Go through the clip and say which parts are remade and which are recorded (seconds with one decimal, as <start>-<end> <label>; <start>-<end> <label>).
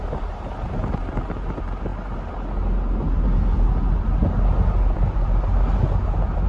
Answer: 0.0-6.5 recorded